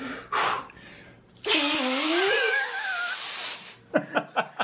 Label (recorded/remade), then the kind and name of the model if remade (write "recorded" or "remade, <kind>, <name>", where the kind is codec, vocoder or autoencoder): recorded